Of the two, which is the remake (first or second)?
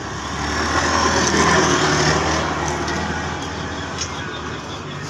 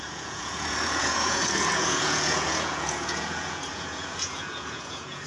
second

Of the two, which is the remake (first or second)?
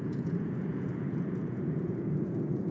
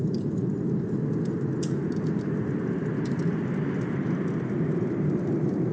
first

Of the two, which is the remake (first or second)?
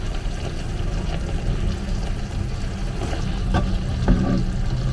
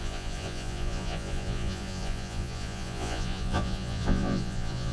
second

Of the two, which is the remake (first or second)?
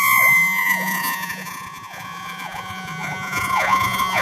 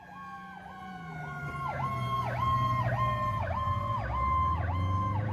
first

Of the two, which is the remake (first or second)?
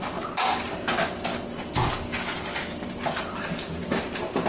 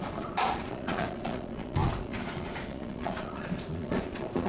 second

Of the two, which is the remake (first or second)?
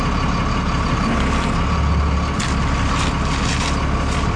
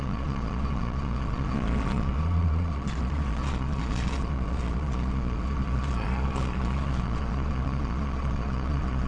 second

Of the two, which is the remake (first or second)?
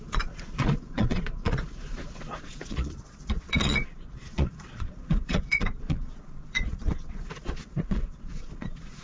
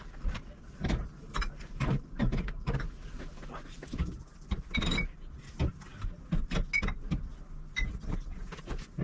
first